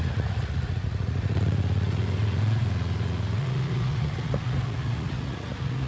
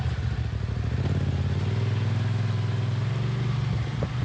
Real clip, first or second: second